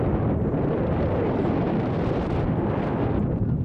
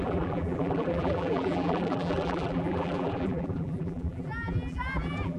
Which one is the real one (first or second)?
first